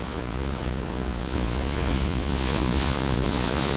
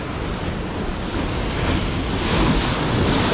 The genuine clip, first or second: second